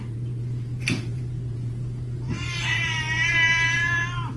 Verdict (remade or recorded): remade